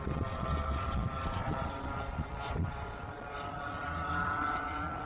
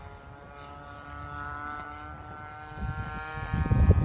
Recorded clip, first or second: second